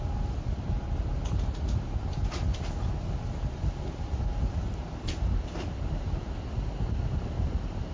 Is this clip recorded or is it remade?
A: recorded